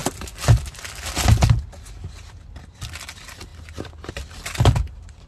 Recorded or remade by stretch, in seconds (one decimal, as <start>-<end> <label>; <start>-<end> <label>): 0.0-5.3 recorded